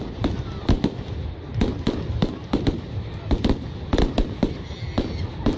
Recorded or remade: recorded